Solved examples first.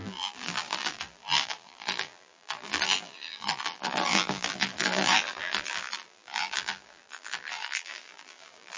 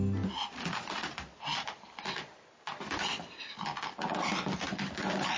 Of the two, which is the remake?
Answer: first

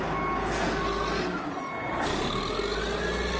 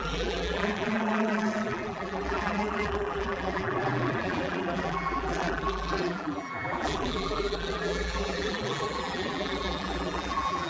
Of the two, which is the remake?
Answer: second